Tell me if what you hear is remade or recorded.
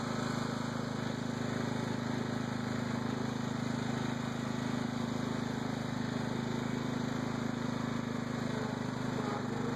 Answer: recorded